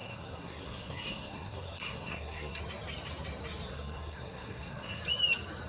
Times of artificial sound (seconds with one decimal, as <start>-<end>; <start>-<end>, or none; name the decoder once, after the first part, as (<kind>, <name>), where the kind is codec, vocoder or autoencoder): 0.0-2.6 (codec, SNAC); 3.7-5.0